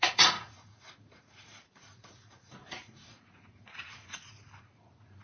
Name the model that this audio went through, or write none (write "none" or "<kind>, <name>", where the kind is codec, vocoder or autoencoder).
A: vocoder, Vocos